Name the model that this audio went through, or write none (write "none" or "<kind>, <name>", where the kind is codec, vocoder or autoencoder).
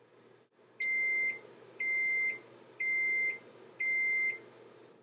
none